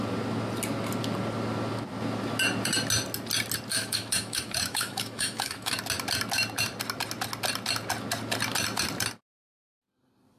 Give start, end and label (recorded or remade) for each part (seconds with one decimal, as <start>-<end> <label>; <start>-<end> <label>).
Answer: 0.0-3.7 recorded; 3.7-5.8 remade; 5.8-10.4 recorded